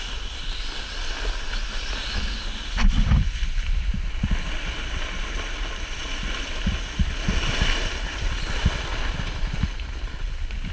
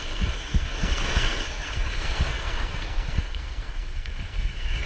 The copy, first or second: second